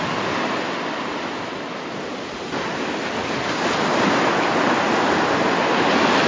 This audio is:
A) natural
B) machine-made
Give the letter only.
A